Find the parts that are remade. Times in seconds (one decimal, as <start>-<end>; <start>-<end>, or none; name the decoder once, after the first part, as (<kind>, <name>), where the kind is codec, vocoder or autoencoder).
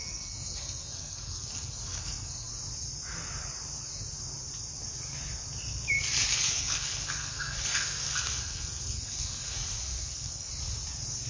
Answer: 0.0-2.5 (codec, SNAC); 6.3-10.5